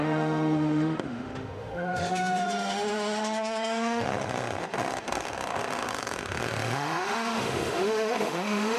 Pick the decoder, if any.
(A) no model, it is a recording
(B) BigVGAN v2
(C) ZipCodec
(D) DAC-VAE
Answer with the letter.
D